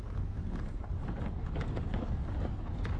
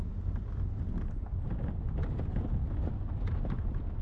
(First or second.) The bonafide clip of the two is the second